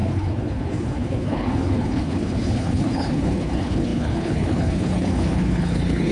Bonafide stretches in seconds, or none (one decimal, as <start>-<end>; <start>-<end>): none